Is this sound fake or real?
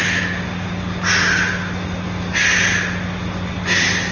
real